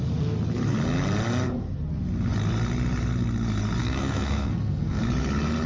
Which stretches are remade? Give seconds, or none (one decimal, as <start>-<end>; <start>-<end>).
3.8-5.0